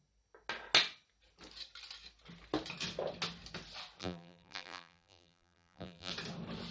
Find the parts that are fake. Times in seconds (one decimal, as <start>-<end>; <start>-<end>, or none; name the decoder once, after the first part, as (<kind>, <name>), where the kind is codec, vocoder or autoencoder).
4.0-6.1 (vocoder, BigVGAN v2)